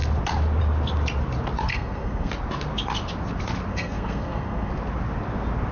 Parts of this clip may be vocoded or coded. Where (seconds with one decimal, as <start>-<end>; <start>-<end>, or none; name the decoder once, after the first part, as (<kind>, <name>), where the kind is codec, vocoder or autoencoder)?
1.7-2.3 (codec, SNAC); 3.7-4.7

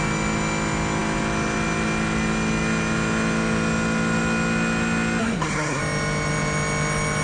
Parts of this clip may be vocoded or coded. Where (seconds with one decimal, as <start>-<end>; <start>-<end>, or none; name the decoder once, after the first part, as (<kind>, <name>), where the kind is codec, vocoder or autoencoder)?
5.2-5.8 (codec, SNAC)

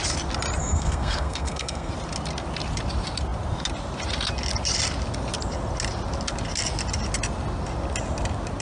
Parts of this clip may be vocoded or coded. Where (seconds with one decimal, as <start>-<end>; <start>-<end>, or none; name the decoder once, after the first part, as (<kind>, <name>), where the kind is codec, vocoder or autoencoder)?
0.6-1.9 (codec, SNAC)

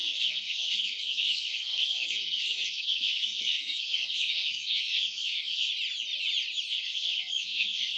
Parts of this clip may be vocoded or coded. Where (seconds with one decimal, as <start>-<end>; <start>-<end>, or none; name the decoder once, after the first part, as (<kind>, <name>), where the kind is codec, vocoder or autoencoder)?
0.0-5.7 (codec, SNAC); 6.7-8.0